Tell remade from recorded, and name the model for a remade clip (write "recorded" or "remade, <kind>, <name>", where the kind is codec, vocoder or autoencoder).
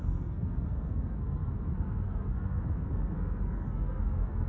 remade, codec, SNAC